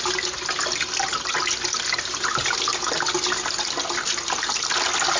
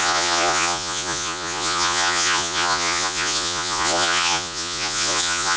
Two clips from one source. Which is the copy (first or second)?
second